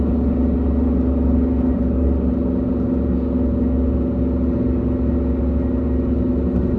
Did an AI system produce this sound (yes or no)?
no